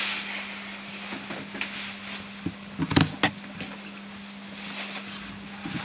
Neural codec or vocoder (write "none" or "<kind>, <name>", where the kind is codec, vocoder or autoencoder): none